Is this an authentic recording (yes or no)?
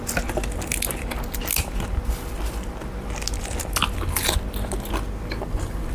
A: yes